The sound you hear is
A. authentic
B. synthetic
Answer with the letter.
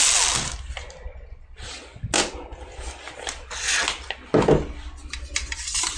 A